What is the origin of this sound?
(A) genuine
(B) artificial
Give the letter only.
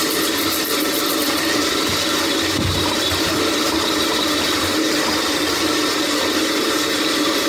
A